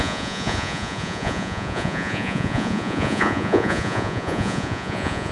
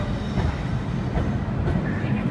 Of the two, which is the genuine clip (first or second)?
second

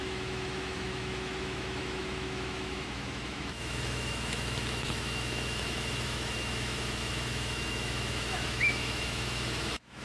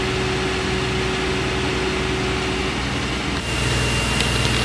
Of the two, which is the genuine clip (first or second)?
second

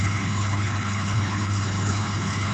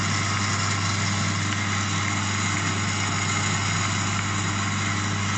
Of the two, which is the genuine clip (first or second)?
second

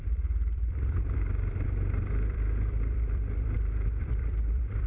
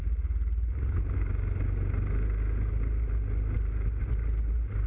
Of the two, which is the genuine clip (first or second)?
second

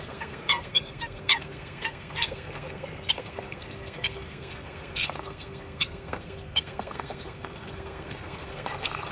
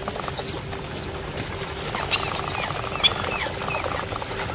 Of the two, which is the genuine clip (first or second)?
second